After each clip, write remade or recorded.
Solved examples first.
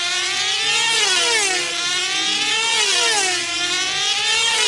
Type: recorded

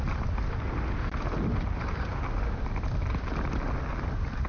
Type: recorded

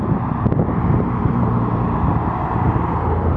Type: remade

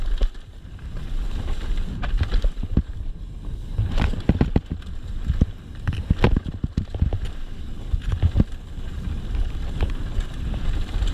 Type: recorded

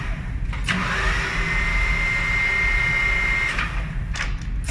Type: recorded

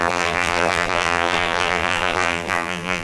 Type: remade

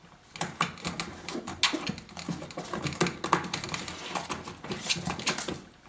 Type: recorded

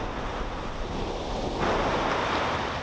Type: recorded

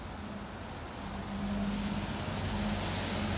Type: recorded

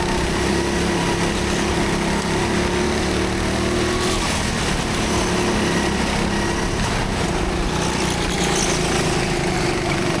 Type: recorded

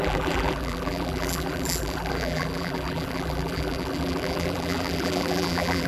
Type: remade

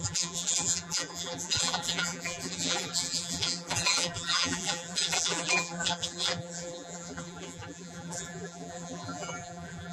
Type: remade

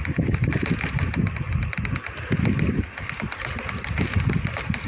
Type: recorded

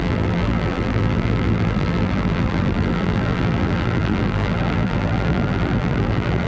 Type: remade